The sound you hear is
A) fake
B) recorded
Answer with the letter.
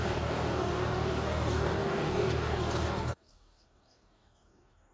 A